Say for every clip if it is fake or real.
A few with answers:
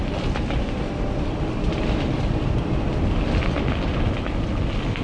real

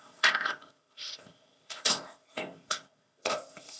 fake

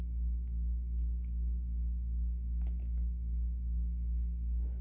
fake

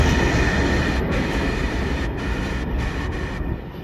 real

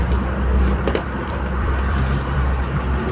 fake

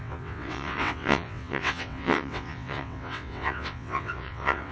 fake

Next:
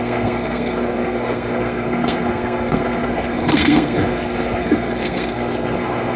fake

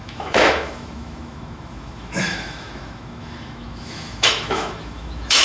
fake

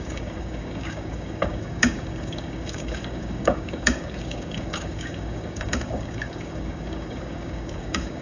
fake